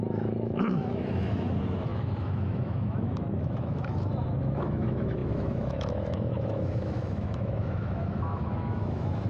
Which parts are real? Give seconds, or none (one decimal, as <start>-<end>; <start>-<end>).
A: none